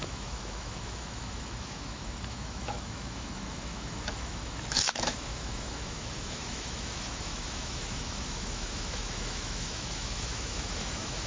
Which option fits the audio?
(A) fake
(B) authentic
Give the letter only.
A